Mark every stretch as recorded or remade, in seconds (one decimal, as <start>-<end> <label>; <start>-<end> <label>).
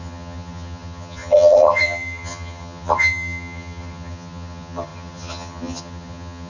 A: 0.0-6.5 remade